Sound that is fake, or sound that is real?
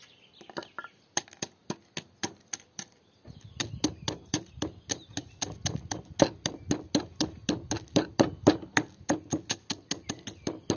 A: real